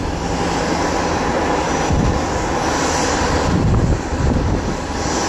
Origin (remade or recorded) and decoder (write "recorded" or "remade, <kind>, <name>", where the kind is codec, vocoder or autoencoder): recorded